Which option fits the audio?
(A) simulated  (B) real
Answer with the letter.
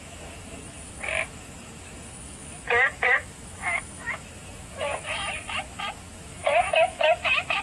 A